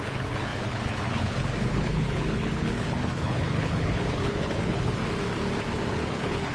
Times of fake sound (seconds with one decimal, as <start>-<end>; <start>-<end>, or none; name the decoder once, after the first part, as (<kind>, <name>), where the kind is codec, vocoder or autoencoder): 0.0-5.0 (codec, HILCodec); 5.9-6.5